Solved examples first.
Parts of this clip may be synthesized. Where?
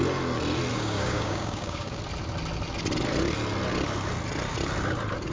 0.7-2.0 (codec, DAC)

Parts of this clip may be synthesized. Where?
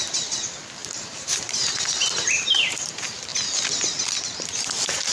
0.8-2.9 (vocoder, BigVGAN v2)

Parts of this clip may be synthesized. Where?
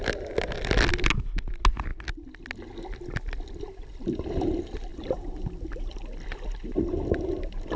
4.9-5.9 (vocoder, BigVGAN v2)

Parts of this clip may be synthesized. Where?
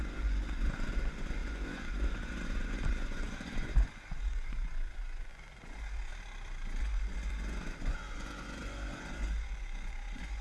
0.0-6.1 (vocoder, Vocos); 6.8-10.4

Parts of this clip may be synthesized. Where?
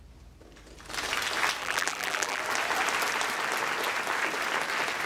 1.6-2.4 (vocoder, BigVGAN v2)